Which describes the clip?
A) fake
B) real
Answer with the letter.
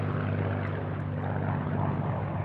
B